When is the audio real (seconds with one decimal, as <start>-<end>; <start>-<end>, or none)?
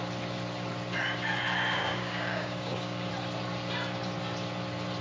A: 0.0-1.8; 3.1-5.0